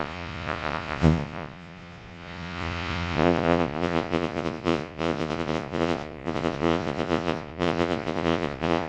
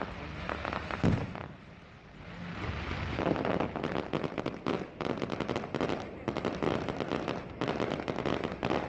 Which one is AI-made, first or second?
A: first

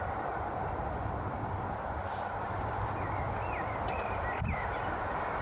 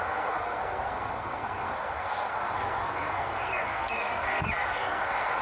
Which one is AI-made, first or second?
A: second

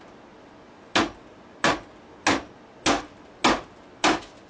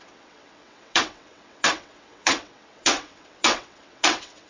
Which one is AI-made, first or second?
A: second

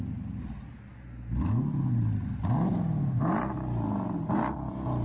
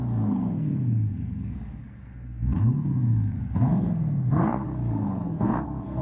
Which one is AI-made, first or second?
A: second